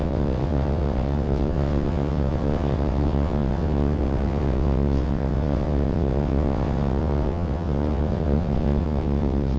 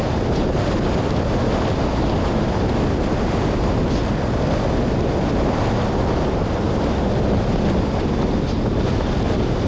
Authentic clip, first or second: second